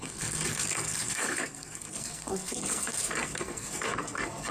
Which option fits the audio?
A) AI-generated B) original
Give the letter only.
A